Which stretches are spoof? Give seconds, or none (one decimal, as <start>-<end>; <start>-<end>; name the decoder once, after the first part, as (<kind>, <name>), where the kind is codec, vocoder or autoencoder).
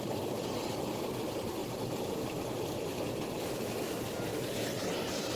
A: none